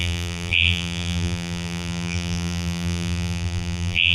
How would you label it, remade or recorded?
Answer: remade